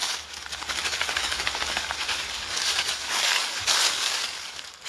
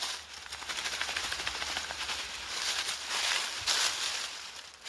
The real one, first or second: second